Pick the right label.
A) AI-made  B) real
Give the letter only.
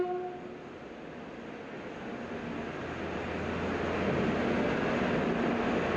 B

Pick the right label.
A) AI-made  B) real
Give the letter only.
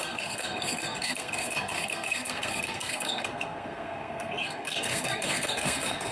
A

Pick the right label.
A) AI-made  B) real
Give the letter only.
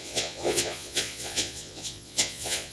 A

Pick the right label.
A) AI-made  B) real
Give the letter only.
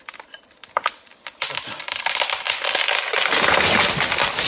B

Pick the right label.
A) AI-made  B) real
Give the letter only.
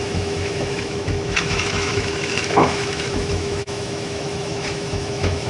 A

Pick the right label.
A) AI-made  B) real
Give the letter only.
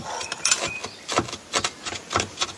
B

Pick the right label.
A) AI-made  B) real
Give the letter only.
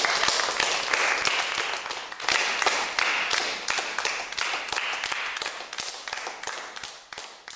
B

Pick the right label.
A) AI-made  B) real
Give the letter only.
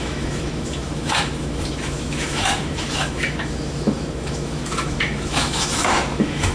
A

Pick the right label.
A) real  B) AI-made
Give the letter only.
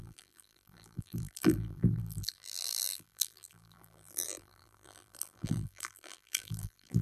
B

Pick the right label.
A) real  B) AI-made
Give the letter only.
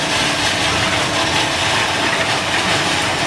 A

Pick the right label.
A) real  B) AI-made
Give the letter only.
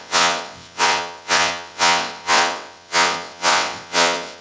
B